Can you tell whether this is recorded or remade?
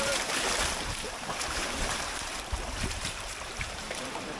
remade